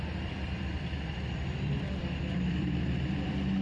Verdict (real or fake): fake